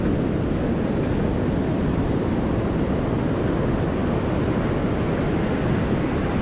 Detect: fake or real real